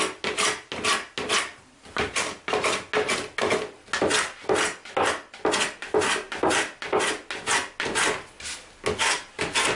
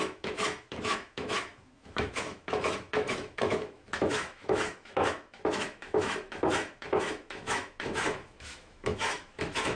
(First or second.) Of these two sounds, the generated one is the second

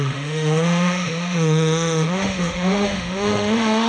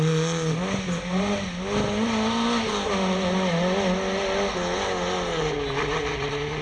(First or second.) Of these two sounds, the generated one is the first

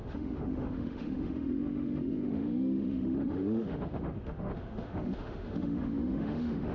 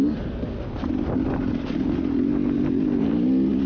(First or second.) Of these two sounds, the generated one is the first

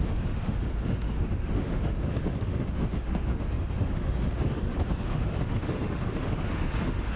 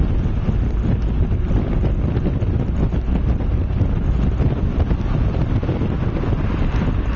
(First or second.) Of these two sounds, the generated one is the first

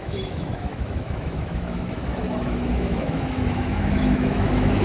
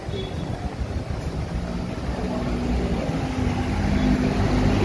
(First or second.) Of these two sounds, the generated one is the first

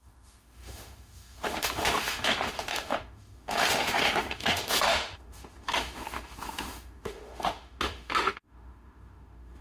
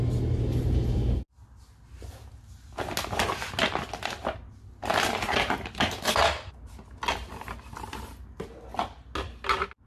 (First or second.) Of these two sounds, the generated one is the first